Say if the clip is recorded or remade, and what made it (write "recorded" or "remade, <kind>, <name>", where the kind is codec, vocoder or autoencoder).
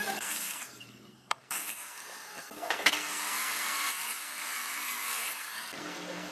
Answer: remade, codec, SNAC